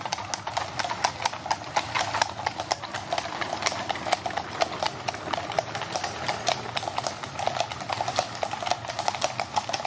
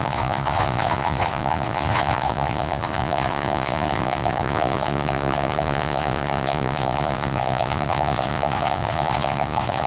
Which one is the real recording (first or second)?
first